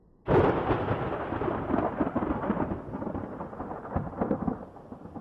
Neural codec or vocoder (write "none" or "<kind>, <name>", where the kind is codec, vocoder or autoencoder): none